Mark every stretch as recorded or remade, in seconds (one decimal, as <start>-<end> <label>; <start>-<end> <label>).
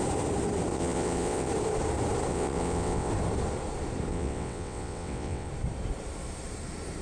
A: 0.0-0.7 recorded; 0.7-1.5 remade; 1.5-2.3 recorded; 2.3-3.1 remade; 3.1-4.1 recorded; 4.1-5.5 remade; 5.5-7.0 recorded